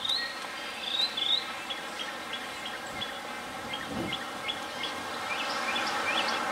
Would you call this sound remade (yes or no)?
no